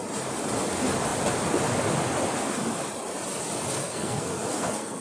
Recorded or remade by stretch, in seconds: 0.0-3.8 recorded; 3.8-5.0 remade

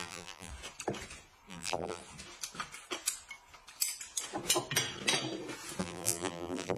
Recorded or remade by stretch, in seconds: 0.0-0.5 remade; 0.5-1.5 recorded; 1.5-2.0 remade; 2.0-5.8 recorded; 5.8-6.8 remade

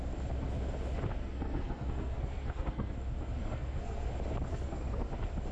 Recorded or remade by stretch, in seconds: 0.0-1.2 recorded; 1.2-2.9 remade; 2.9-3.4 recorded; 3.4-4.1 remade; 4.1-4.5 recorded; 4.5-5.1 remade; 5.1-5.5 recorded

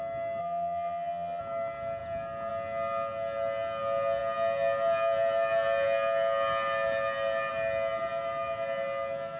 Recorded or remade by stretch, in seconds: 0.0-0.4 recorded; 0.4-1.4 remade; 1.4-9.4 recorded

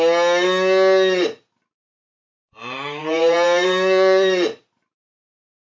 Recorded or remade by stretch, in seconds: 0.0-2.1 recorded; 2.1-5.1 remade; 5.1-5.8 recorded

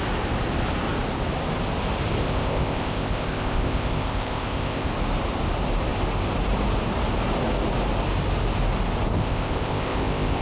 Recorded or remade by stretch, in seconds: 0.0-2.2 recorded; 2.2-4.9 remade; 4.9-9.1 recorded; 9.1-10.4 remade

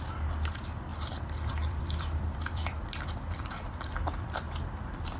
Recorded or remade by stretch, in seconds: 0.0-0.9 recorded; 0.9-4.0 remade; 4.0-5.2 recorded